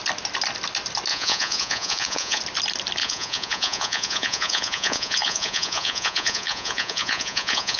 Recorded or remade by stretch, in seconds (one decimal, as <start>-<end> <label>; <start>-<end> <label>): 0.0-1.1 recorded; 1.1-2.4 remade; 2.4-3.0 recorded; 3.0-7.8 remade